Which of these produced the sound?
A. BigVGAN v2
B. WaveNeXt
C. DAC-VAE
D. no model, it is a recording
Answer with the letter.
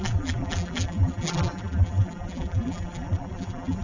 A